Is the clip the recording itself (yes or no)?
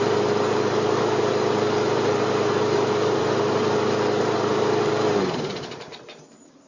no